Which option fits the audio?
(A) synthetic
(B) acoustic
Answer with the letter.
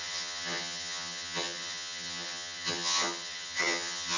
A